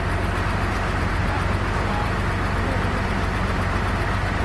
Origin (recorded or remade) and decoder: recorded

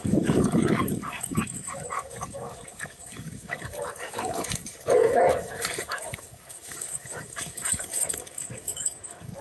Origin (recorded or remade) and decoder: remade, codec, DAC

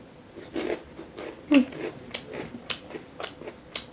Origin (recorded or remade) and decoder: recorded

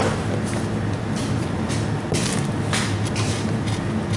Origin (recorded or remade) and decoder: recorded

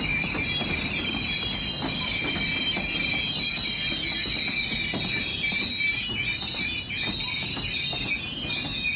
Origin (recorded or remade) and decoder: recorded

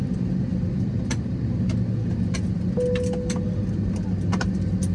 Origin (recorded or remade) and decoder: recorded